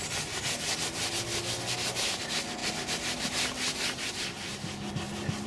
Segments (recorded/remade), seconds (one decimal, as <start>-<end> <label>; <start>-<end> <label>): 0.0-5.5 recorded